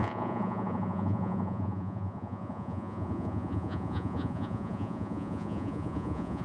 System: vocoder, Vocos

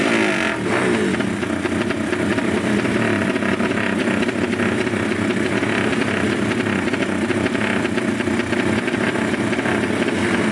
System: none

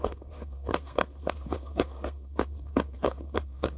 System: codec, SNAC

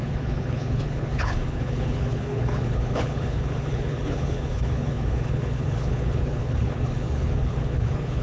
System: codec, HILCodec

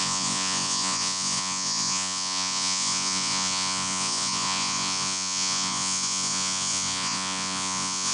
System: vocoder, Vocos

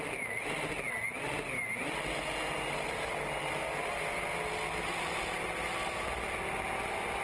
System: none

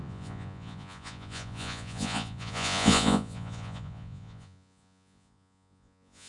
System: vocoder, Vocos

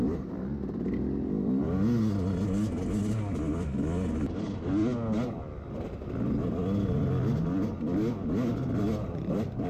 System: none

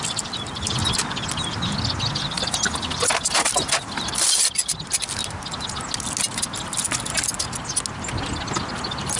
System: none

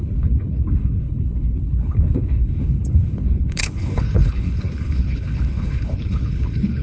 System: codec, HILCodec